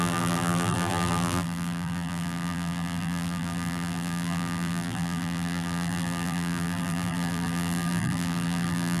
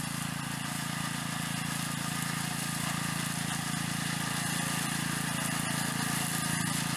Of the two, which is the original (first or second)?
second